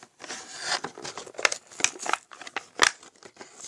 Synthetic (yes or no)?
no